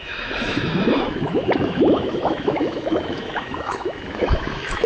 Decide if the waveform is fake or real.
fake